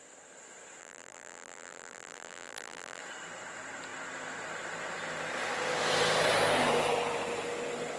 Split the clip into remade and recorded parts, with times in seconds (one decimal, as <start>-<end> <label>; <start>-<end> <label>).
0.0-0.8 recorded; 0.8-3.0 remade; 3.0-8.0 recorded